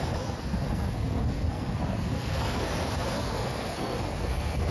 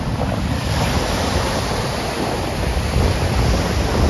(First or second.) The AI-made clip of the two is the first